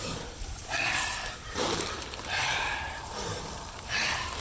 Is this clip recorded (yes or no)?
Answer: no